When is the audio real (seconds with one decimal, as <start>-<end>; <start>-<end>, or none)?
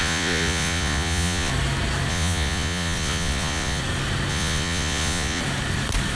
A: 1.5-2.1; 3.8-4.3; 5.4-6.2